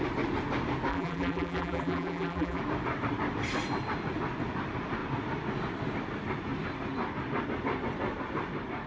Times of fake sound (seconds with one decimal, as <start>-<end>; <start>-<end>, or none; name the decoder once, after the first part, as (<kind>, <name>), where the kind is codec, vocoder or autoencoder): 0.9-2.6 (vocoder, BigVGAN v2)